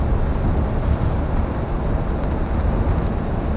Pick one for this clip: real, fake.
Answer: real